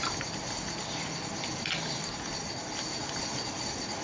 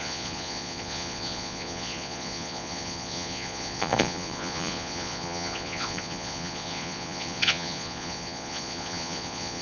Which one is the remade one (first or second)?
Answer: second